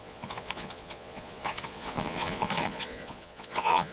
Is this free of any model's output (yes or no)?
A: no